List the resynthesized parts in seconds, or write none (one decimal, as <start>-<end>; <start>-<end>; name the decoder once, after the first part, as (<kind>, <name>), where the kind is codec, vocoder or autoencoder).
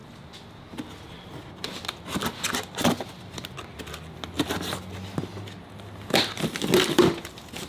none